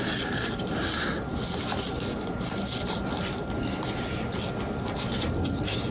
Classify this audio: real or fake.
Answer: real